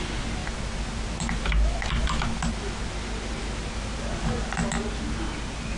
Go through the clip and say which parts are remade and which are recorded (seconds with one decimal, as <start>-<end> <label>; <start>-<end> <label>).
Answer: 0.0-5.8 recorded